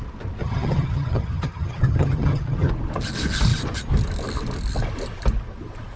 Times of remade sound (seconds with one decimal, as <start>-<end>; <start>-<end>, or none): 0.4-2.7